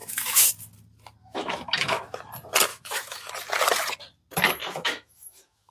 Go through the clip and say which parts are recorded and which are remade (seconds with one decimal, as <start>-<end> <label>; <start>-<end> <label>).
0.0-0.5 remade; 0.5-1.2 recorded; 1.2-2.2 remade; 2.2-2.7 recorded; 2.7-3.3 remade; 3.3-4.6 recorded; 4.6-5.7 remade